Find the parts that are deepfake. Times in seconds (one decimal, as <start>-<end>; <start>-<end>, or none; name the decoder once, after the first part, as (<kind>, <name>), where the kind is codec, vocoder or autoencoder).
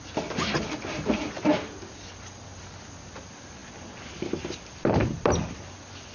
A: 1.5-2.8 (vocoder, BigVGAN v2)